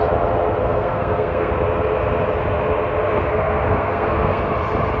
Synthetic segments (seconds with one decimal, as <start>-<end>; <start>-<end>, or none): 0.6-1.5; 3.1-4.4